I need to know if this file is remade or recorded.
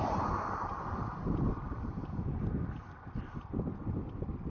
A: recorded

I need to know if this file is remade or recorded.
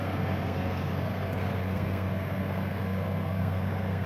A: remade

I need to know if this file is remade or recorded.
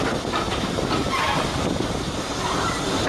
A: recorded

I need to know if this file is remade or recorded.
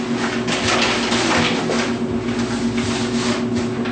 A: recorded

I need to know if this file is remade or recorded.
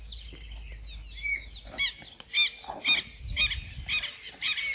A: recorded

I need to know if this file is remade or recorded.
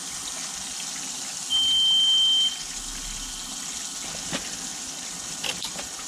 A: recorded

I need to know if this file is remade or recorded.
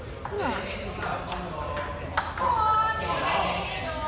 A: recorded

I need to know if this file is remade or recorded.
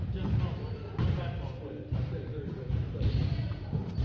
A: remade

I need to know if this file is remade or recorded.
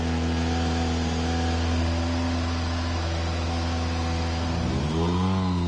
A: recorded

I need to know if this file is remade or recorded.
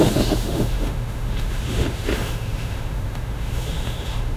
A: remade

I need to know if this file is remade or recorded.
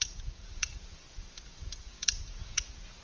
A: remade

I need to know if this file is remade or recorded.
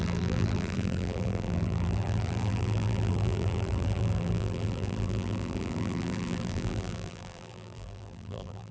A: remade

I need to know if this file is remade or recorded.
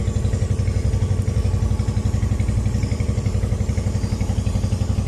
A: recorded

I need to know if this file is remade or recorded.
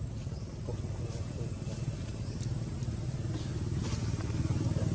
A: recorded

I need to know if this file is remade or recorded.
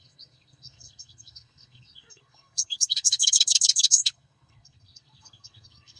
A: remade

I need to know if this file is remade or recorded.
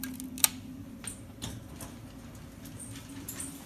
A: recorded